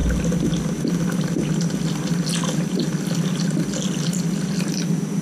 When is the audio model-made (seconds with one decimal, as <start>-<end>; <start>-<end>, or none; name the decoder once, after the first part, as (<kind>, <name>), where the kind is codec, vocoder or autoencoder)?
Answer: none